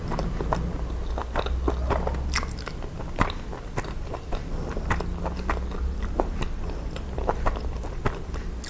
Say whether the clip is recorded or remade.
recorded